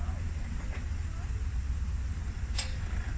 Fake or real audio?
fake